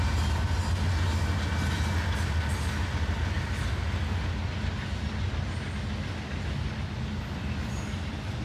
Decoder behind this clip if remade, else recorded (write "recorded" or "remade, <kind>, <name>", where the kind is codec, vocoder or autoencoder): recorded